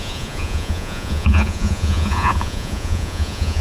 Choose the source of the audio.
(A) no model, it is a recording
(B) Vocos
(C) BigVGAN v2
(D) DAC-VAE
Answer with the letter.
B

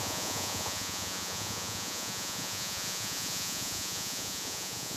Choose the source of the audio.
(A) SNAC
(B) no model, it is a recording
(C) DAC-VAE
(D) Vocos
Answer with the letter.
D